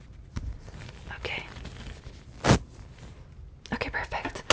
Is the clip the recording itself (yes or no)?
yes